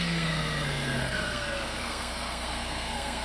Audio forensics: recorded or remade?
remade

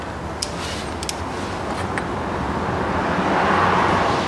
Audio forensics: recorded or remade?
recorded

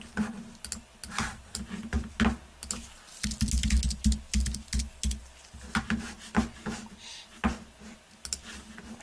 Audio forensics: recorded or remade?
recorded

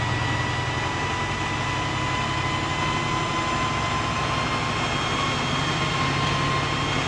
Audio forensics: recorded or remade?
recorded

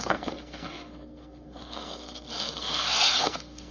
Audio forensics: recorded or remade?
remade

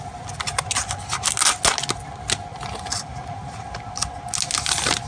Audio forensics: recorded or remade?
recorded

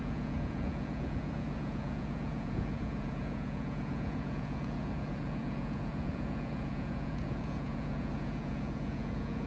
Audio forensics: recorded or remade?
remade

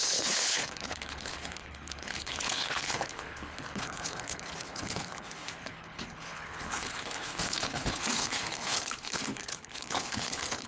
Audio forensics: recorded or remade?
remade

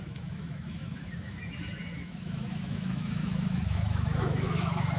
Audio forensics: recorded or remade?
remade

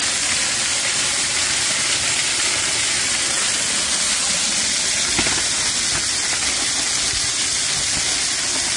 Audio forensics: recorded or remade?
recorded